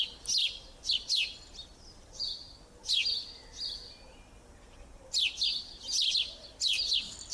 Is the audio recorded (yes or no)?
yes